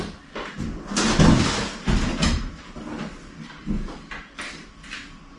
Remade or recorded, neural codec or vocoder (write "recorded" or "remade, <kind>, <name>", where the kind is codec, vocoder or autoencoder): recorded